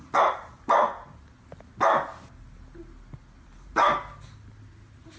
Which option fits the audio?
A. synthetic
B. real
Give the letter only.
B